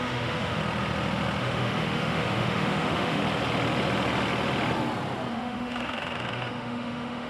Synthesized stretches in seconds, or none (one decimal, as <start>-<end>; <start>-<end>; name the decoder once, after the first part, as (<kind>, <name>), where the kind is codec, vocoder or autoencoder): 0.0-0.6 (autoencoder, DAC-VAE); 1.4-3.2; 5.3-7.3